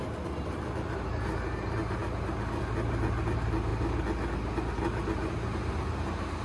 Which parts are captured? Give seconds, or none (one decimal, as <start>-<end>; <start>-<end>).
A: 0.0-6.4